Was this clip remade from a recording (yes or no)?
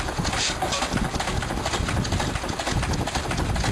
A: no